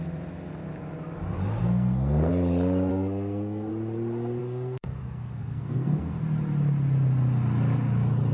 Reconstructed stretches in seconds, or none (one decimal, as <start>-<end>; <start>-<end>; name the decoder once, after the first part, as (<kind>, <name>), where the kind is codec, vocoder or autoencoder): 1.6-2.3 (codec, SNAC); 2.9-3.7; 4.4-6.2